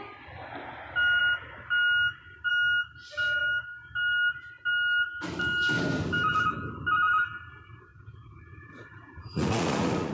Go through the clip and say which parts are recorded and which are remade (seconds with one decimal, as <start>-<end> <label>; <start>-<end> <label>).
0.0-7.9 recorded; 7.9-10.1 remade